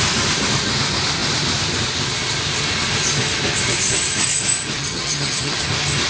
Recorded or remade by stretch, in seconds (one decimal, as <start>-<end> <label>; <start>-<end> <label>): 0.0-4.8 recorded; 4.8-5.6 remade; 5.6-6.1 recorded

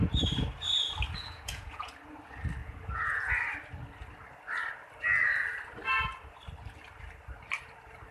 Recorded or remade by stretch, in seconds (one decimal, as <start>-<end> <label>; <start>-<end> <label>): 0.0-1.2 recorded; 1.2-1.9 remade; 1.9-2.6 recorded; 2.6-3.3 remade; 3.3-8.1 recorded